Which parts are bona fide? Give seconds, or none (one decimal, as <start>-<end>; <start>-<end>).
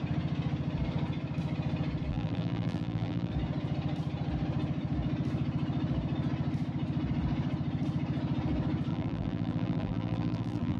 0.0-2.1; 3.3-8.9